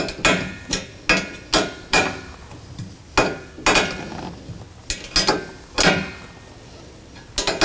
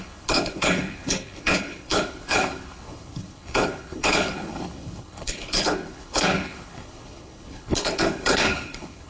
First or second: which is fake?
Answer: second